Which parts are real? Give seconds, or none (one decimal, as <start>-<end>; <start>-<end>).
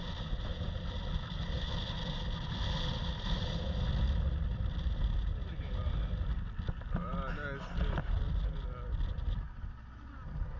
0.0-10.6